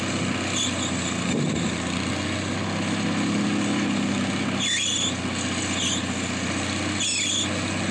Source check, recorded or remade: recorded